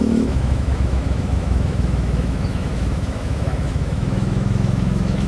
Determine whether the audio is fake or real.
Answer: fake